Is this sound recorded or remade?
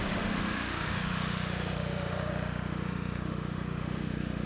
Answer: remade